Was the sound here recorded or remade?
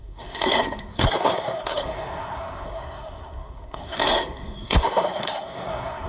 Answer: remade